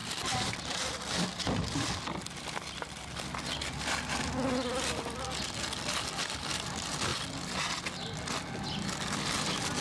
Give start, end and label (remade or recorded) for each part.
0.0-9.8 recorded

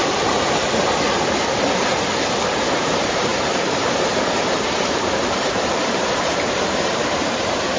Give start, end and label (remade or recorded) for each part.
0.0-2.5 recorded; 2.5-7.8 remade

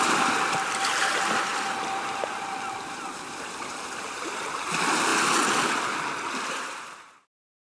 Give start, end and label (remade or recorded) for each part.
0.0-5.1 remade; 5.1-6.5 recorded; 6.5-7.6 remade

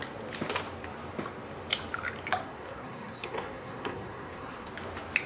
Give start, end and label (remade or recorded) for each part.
0.0-2.4 recorded; 2.4-4.7 remade; 4.7-5.3 recorded

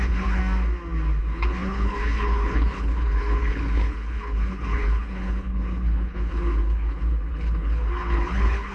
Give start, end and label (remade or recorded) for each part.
0.0-0.4 remade; 0.4-1.2 recorded; 1.2-8.7 remade

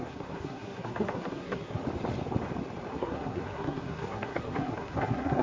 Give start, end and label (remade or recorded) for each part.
0.0-1.8 remade; 1.8-2.9 recorded; 2.9-5.4 remade

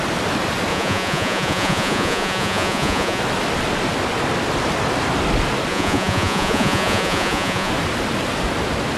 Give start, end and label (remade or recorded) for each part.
0.0-0.7 recorded; 0.7-3.2 remade; 3.2-5.7 recorded; 5.7-7.7 remade; 7.7-9.0 recorded